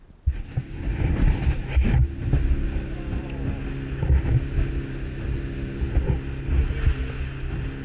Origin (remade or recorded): recorded